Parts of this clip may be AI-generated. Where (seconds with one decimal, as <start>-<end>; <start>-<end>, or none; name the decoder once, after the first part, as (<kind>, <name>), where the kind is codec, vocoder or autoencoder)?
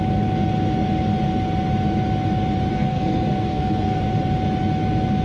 2.7-4.0 (codec, SNAC)